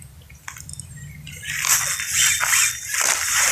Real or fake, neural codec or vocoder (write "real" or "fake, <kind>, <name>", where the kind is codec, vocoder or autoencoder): real